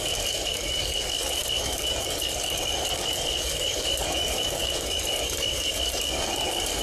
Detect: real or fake fake